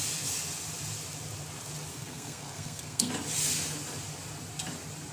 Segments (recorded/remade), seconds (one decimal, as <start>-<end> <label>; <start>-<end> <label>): 0.0-1.9 recorded; 1.9-3.1 remade; 3.1-5.1 recorded